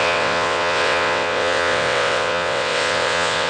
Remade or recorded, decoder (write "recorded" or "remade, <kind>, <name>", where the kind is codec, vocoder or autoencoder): remade, vocoder, WaveNeXt